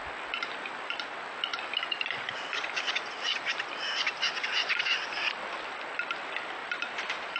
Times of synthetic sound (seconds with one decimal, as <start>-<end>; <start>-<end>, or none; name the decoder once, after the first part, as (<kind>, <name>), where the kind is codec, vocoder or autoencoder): none